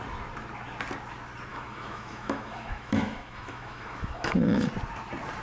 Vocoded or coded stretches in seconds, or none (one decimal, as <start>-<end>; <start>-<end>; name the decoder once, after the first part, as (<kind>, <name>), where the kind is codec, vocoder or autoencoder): 1.5-4.7 (autoencoder, DAC-VAE)